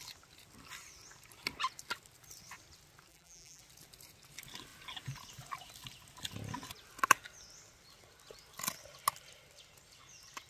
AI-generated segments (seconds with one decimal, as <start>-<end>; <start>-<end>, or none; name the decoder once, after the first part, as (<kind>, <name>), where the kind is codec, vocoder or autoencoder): 3.1-3.6 (vocoder, BigVGAN v2)